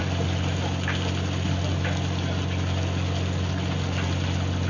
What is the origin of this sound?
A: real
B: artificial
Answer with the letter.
A